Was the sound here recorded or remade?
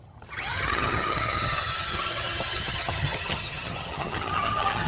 remade